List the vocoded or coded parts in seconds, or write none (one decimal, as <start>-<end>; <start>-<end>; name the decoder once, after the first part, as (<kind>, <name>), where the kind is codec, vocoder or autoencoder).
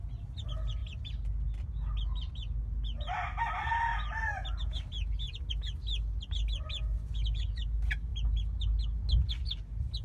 none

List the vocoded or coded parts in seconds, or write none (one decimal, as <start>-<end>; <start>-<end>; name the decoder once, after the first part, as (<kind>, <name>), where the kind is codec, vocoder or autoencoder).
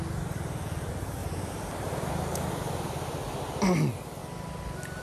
none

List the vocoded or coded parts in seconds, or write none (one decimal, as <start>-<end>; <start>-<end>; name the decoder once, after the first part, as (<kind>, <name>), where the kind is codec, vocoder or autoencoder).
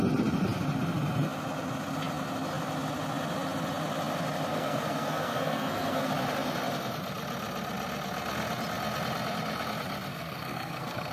4.5-6.1 (codec, SNAC); 10.1-11.1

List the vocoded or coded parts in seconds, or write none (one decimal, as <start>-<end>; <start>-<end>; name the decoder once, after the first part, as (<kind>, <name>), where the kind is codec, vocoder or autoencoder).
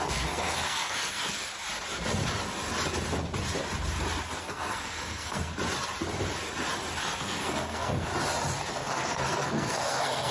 0.0-1.5 (codec, SNAC); 4.4-5.5; 7.0-8.1; 8.7-10.3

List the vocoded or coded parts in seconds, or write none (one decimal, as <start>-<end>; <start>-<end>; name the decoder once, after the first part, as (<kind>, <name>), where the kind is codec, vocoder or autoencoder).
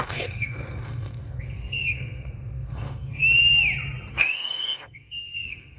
0.0-3.2 (codec, SNAC); 4.1-5.8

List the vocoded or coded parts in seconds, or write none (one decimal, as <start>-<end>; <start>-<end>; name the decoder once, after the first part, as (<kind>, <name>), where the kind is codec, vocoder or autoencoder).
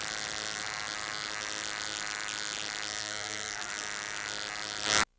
3.0-3.7 (codec, SNAC)